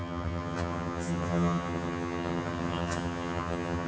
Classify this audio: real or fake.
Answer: fake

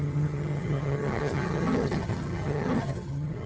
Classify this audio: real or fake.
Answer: fake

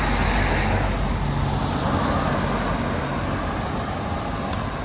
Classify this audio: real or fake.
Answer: real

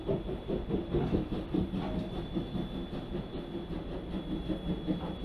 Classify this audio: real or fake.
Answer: real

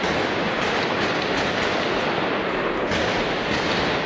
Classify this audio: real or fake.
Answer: real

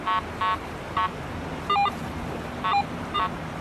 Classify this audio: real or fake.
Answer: real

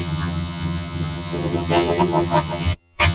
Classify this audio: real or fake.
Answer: fake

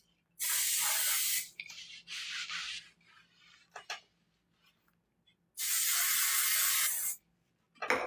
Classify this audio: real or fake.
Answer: real